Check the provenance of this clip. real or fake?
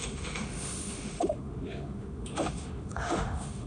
fake